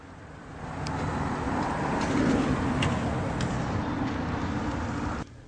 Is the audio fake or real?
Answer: real